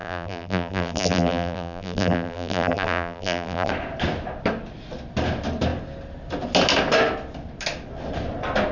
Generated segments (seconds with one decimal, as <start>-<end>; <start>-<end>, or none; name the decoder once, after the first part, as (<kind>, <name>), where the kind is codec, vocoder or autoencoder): 0.0-3.7 (vocoder, BigVGAN v2)